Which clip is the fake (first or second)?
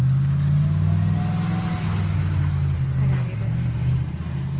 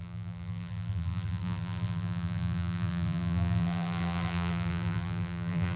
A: second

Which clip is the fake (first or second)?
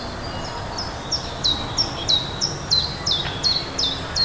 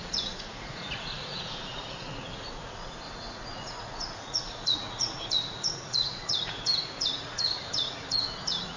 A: second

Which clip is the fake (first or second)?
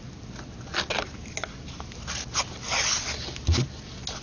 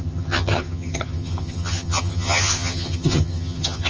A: second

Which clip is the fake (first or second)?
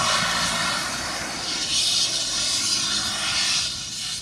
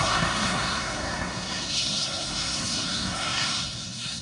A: second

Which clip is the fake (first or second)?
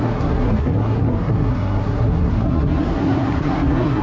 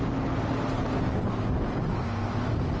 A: first